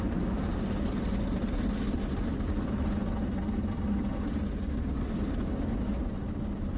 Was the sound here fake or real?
real